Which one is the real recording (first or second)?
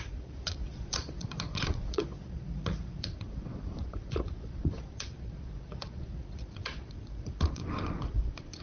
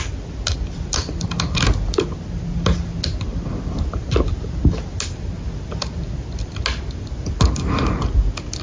second